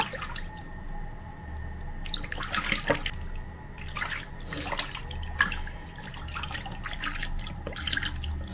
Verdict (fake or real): real